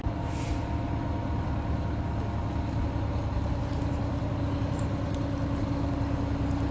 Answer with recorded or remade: recorded